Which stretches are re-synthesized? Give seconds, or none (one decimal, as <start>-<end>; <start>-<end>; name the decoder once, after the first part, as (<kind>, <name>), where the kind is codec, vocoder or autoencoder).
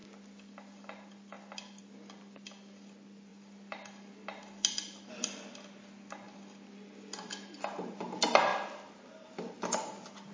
none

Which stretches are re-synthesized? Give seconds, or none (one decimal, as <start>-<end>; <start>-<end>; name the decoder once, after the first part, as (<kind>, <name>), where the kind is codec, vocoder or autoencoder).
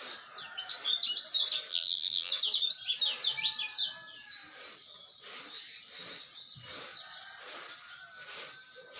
1.7-2.3 (vocoder, BigVGAN v2)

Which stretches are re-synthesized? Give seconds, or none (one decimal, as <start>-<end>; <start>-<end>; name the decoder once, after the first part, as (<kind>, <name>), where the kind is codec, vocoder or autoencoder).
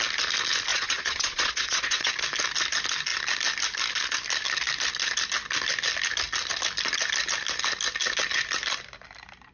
0.7-2.1 (vocoder, Vocos)